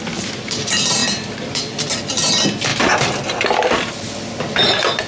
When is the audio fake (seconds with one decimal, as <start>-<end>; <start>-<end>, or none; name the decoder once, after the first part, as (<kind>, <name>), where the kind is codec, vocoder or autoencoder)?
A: 1.0-1.8 (vocoder, BigVGAN v2)